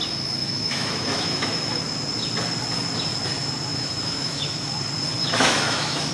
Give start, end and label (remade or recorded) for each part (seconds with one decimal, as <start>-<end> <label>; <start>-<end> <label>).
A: 0.0-0.4 recorded; 0.4-1.8 remade; 1.8-3.7 recorded; 3.7-4.7 remade; 4.7-5.2 recorded; 5.2-6.1 remade